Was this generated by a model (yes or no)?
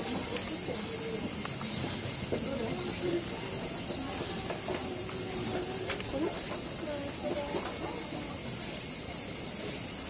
no